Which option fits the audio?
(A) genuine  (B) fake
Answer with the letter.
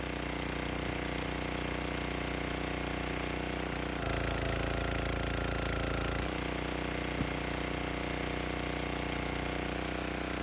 A